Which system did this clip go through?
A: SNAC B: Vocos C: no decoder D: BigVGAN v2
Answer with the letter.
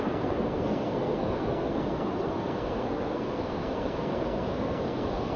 A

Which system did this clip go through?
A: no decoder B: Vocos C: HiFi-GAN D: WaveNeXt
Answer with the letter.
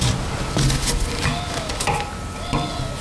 A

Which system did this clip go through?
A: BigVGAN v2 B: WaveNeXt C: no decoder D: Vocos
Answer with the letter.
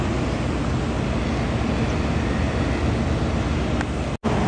C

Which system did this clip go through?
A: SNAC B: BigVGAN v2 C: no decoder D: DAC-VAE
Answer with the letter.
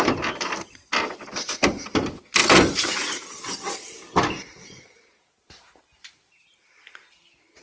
C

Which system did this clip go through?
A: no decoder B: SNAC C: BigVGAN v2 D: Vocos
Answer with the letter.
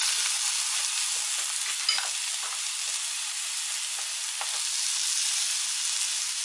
A